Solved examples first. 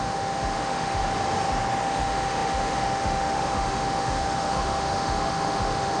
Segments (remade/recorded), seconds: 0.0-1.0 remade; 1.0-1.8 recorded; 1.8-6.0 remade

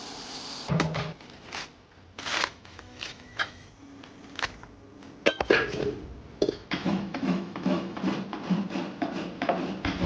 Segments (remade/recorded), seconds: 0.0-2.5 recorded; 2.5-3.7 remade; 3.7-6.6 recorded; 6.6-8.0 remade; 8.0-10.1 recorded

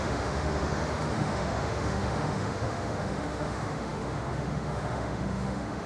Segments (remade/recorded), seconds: 0.0-5.9 remade

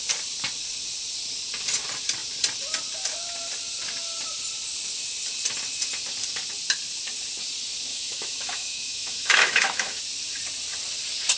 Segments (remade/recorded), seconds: 0.0-7.9 recorded; 7.9-10.0 remade; 10.0-11.4 recorded